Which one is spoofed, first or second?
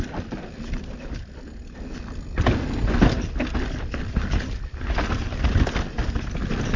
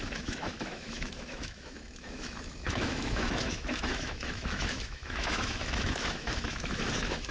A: second